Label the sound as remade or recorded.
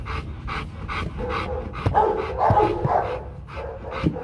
recorded